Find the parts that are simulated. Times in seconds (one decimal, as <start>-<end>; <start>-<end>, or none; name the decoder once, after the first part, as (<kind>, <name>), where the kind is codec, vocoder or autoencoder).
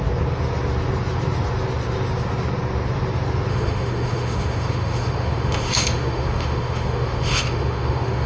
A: 3.5-8.3 (autoencoder, DAC-VAE)